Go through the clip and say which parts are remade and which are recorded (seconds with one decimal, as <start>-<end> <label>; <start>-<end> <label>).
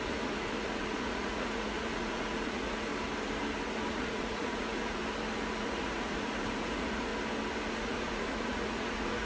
0.0-2.9 remade; 2.9-3.9 recorded; 3.9-5.0 remade; 5.0-5.6 recorded; 5.6-7.1 remade; 7.1-7.7 recorded; 7.7-9.3 remade